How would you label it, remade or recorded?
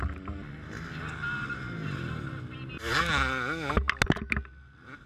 recorded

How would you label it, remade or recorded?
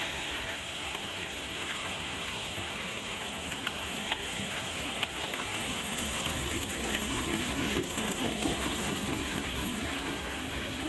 remade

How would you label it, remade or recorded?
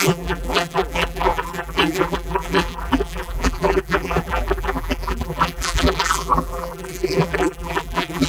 remade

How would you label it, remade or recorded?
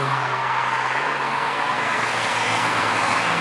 remade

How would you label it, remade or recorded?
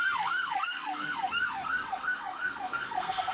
remade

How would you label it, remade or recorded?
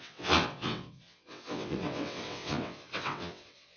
remade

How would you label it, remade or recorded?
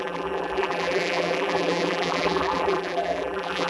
remade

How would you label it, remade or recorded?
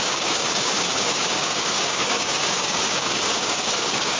remade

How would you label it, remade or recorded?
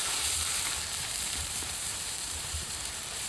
remade